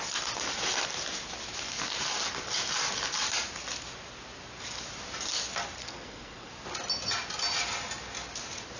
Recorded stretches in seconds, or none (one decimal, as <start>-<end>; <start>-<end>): 0.0-5.8; 6.5-8.8